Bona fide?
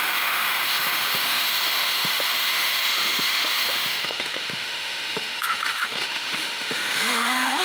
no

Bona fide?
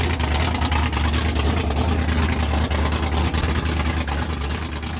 yes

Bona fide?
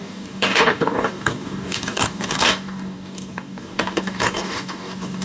no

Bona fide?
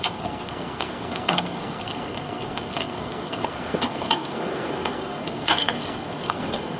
no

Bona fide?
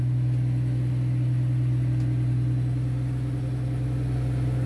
yes